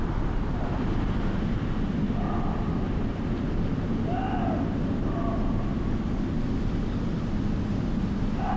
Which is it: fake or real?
real